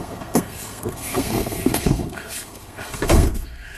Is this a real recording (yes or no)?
no